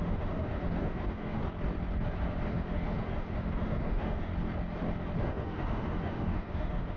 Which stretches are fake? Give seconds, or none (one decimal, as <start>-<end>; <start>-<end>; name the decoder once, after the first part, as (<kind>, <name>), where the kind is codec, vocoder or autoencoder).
0.0-1.4 (autoencoder, DAC-VAE); 2.5-4.3; 5.2-7.0